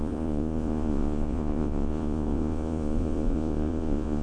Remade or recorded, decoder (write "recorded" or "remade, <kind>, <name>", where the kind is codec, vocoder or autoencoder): remade, vocoder, Vocos